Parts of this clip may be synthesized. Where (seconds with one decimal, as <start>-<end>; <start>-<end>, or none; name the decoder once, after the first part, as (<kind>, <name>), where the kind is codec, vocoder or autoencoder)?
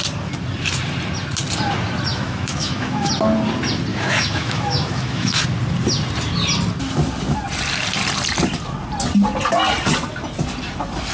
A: 2.1-3.1 (autoencoder, DAC-VAE); 3.9-5.4